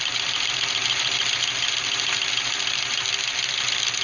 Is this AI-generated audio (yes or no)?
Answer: yes